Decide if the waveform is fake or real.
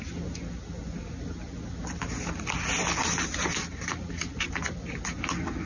real